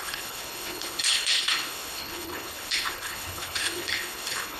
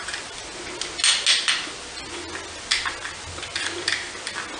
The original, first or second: second